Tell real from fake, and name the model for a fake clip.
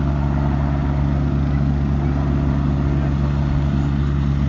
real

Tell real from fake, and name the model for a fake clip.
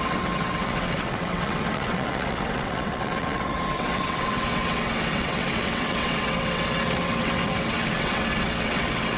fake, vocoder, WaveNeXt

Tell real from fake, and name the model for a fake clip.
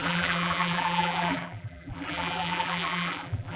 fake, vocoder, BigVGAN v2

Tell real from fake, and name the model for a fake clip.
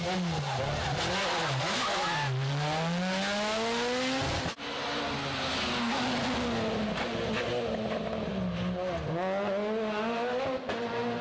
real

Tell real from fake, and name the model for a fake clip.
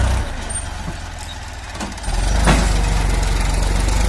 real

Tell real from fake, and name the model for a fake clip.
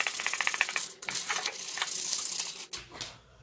real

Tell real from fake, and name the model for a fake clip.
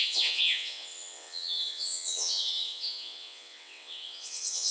fake, vocoder, WaveNeXt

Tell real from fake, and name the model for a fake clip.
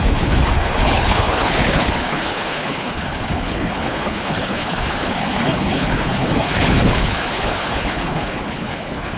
fake, codec, HILCodec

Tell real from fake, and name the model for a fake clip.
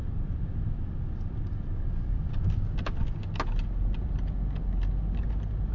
real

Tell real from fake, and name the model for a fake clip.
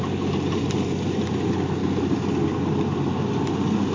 real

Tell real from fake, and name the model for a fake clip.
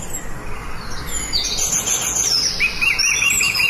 real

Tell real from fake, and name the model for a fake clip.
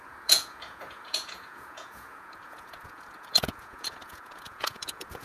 fake, vocoder, Vocos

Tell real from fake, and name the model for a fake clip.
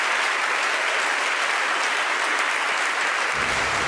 real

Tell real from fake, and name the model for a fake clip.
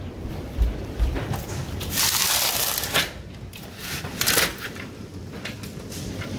fake, vocoder, BigVGAN v2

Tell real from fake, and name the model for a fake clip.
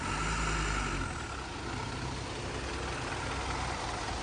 real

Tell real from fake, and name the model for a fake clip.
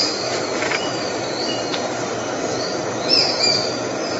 fake, vocoder, BigVGAN v2